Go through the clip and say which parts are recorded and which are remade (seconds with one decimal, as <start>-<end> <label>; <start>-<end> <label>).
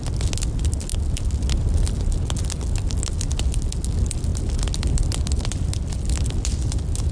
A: 0.0-7.1 recorded